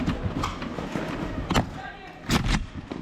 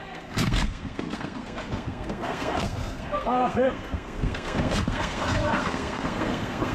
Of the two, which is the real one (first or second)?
first